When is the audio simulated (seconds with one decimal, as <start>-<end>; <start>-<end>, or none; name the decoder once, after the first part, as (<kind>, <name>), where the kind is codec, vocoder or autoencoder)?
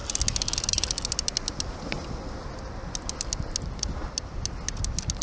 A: none